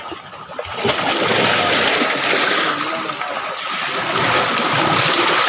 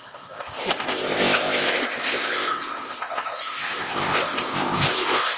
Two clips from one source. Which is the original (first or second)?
first